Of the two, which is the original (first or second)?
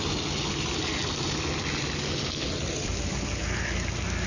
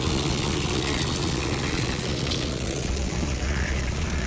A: first